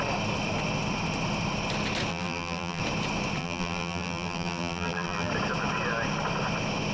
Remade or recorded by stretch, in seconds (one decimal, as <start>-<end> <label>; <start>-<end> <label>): 0.0-2.1 recorded; 2.1-2.8 remade; 2.8-3.4 recorded; 3.4-5.3 remade; 5.3-6.9 recorded